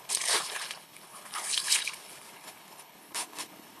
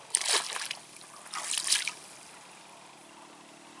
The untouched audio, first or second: second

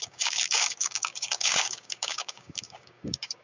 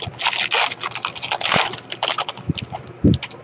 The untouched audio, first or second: second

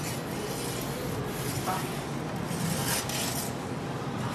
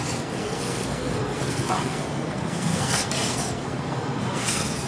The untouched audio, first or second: first